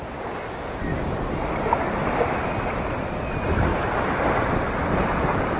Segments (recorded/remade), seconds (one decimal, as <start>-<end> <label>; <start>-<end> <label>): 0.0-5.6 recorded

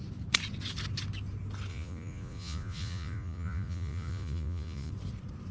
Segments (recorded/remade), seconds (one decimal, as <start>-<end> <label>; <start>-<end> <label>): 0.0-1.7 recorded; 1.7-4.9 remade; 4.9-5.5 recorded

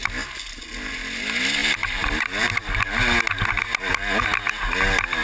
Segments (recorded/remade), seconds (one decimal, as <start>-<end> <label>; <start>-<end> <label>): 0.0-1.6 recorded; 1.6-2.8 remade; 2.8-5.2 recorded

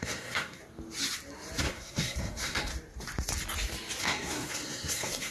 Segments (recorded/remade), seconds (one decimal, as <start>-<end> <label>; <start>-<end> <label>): 0.0-0.6 remade; 0.6-1.6 recorded; 1.6-2.7 remade; 2.7-4.0 recorded; 4.0-5.3 remade

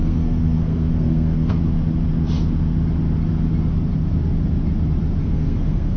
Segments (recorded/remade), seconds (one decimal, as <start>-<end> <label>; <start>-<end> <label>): 0.0-1.6 remade; 1.6-5.2 recorded; 5.2-6.0 remade